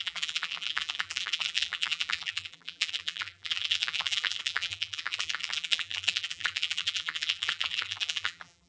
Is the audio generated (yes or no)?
yes